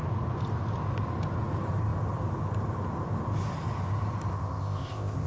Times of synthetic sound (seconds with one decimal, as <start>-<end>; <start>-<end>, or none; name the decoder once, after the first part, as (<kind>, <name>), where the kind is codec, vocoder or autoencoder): 4.3-5.3 (codec, ZipCodec)